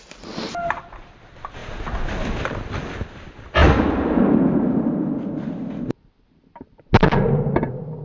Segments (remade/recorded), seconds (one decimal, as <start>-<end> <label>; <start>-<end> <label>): 0.0-8.0 recorded

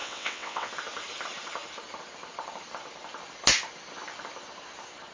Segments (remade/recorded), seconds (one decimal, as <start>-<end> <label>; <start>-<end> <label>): 0.0-0.7 remade; 0.7-5.1 recorded

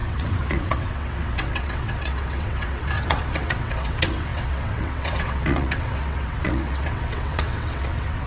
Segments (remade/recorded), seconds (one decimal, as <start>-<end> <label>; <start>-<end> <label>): 0.0-8.3 remade

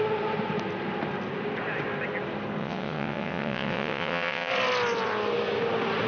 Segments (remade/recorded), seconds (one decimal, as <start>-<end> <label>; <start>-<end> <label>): 0.0-2.6 recorded; 2.6-4.5 remade; 4.5-6.1 recorded

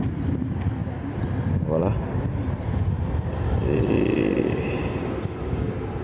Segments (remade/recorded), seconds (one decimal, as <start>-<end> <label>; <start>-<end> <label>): 0.0-6.0 recorded

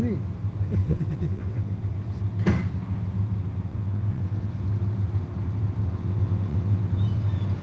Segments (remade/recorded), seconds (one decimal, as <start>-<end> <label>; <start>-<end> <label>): 0.0-0.8 recorded; 0.8-1.8 remade; 1.8-3.7 recorded; 3.7-4.5 remade; 4.5-5.9 recorded; 5.9-6.8 remade; 6.8-7.6 recorded

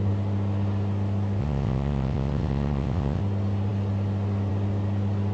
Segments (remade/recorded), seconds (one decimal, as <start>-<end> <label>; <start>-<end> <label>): 0.0-1.4 recorded; 1.4-3.2 remade; 3.2-5.3 recorded

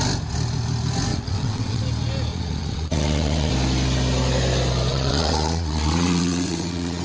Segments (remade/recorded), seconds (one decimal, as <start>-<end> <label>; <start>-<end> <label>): 0.0-1.1 recorded; 1.1-1.8 remade; 1.8-2.3 recorded; 2.3-3.5 remade; 3.5-4.9 recorded; 4.9-7.0 remade